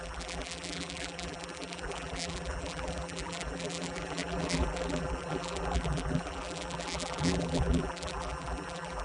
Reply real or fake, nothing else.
fake